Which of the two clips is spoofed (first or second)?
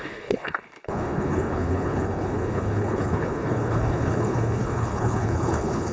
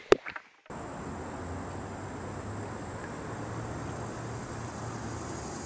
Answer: first